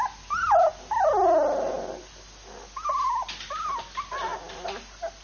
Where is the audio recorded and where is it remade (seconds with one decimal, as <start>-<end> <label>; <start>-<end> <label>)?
0.0-5.2 recorded